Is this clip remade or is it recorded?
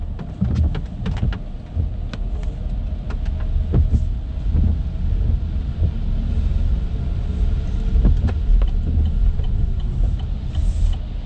recorded